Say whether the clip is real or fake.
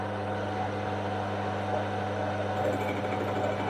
real